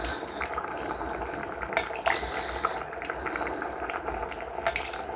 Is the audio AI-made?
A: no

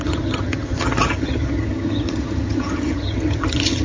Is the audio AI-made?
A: yes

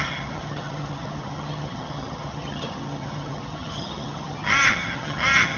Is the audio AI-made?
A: yes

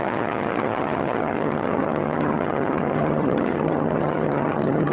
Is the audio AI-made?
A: yes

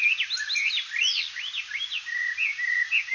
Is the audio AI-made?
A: no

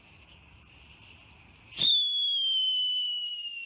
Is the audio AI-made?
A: no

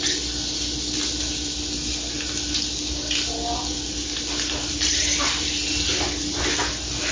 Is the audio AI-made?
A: no